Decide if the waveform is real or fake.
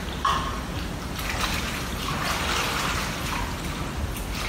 real